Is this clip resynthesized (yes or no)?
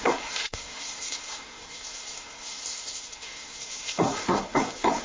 yes